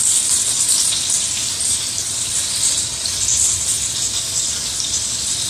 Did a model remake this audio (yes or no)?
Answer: no